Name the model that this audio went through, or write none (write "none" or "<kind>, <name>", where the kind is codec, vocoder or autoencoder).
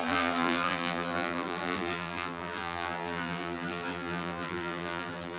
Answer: vocoder, BigVGAN v2